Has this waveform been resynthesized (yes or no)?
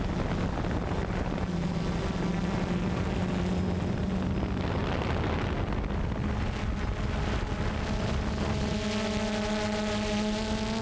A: no